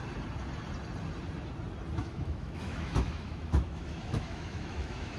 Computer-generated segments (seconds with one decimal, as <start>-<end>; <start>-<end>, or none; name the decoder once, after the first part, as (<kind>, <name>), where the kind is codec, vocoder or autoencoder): 2.0-5.2 (autoencoder, DAC-VAE)